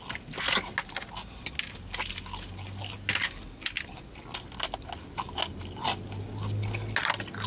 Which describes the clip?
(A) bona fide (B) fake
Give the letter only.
A